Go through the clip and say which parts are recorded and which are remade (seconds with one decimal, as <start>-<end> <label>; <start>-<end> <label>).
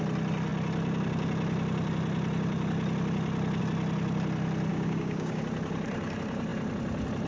0.0-4.7 recorded; 4.7-5.4 remade; 5.4-7.3 recorded